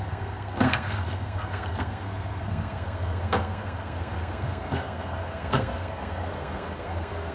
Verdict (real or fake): fake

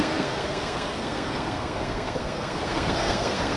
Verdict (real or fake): fake